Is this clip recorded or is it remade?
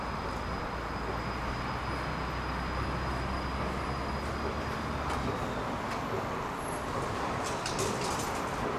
recorded